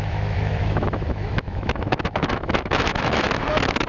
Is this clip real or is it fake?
fake